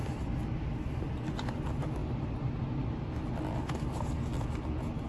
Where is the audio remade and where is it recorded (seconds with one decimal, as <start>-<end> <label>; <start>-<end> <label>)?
0.0-5.1 recorded